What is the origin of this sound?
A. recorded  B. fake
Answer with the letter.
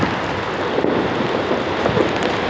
A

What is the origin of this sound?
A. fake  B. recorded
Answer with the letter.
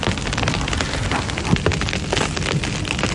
B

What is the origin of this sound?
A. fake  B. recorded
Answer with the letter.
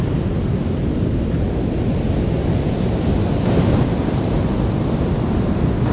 B